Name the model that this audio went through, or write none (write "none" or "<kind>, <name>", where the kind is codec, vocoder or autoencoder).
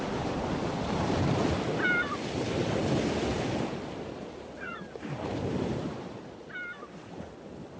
none